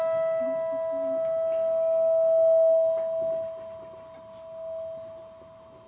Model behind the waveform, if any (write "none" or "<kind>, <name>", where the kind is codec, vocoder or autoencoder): none